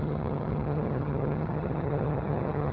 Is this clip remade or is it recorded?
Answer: remade